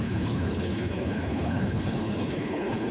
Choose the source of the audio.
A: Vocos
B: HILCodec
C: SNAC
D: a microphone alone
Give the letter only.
B